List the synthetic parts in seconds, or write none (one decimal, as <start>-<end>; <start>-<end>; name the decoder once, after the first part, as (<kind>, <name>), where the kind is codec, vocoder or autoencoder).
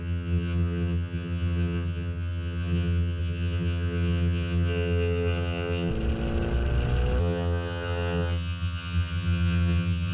0.0-5.9 (vocoder, HiFi-GAN); 7.2-10.1